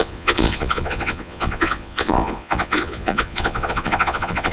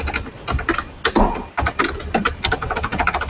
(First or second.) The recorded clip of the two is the second